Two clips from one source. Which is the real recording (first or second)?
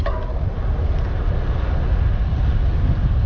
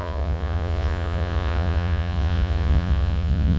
first